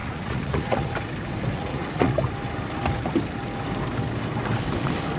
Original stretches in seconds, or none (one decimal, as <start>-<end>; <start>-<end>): 0.9-1.5; 2.3-5.2